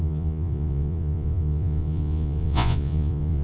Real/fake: fake